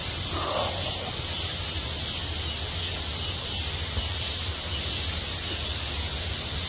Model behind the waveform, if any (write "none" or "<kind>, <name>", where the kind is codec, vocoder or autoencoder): none